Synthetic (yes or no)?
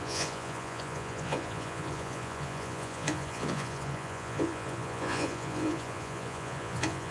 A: yes